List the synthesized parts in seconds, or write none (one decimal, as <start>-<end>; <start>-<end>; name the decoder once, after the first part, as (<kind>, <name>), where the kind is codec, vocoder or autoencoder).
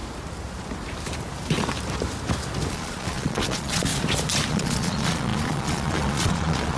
2.7-3.9 (vocoder, Vocos); 4.5-6.8